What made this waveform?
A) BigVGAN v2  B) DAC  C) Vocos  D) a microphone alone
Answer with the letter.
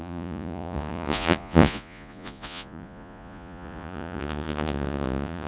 C